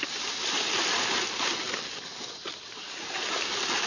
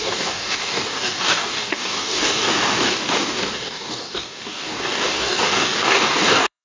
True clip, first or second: first